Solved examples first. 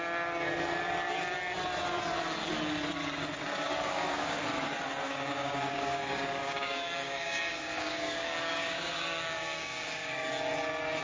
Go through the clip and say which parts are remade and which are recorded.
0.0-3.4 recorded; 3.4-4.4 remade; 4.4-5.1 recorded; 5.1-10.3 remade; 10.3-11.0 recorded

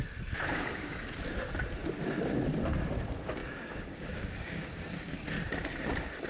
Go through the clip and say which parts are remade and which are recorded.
0.0-0.5 recorded; 0.5-1.1 remade; 1.1-3.4 recorded; 3.4-5.2 remade; 5.2-6.3 recorded

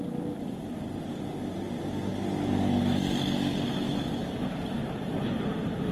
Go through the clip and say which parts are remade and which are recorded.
0.0-5.9 recorded